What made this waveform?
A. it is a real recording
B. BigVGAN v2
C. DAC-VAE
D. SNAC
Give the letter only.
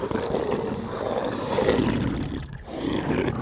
A